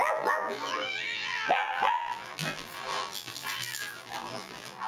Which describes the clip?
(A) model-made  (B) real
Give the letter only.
A